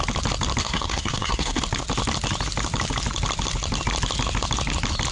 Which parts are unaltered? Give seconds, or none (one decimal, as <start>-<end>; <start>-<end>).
0.0-0.6; 1.6-5.1